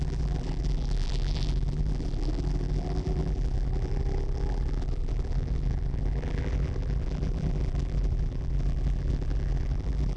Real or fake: fake